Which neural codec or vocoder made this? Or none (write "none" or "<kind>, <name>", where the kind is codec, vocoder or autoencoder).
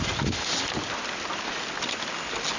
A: none